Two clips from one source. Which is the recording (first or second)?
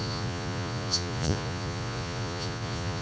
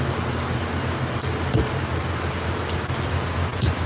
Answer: second